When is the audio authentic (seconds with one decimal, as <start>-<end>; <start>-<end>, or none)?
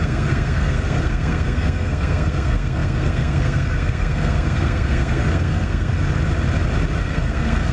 5.9-7.0